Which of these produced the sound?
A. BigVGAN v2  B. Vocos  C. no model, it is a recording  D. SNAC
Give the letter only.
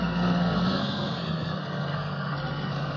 D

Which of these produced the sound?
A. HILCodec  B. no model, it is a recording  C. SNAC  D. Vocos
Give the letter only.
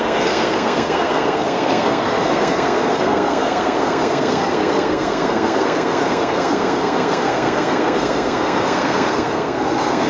C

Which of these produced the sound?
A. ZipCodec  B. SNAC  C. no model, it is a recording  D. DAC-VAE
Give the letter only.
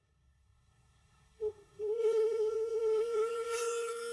B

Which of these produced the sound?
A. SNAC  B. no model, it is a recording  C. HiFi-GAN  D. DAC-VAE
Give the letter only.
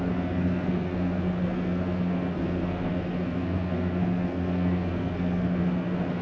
A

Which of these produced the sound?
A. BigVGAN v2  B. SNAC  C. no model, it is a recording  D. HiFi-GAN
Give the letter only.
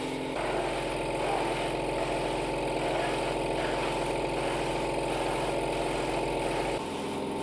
C